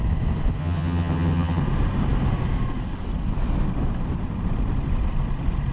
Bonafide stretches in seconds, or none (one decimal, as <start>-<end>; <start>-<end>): 0.0-0.6; 1.6-5.7